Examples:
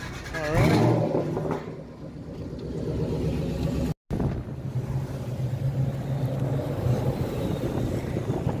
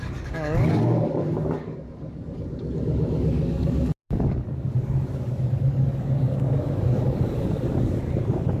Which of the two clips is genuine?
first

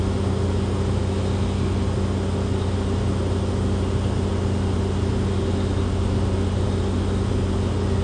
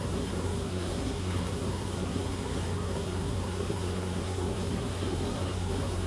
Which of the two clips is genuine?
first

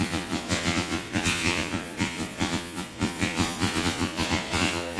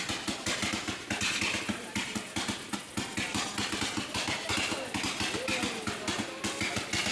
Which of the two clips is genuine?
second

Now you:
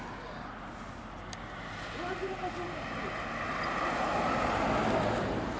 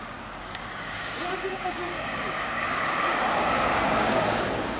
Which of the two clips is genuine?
first